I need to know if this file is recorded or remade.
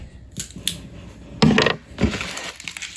recorded